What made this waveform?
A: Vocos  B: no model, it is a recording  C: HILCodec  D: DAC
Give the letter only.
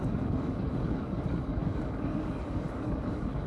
D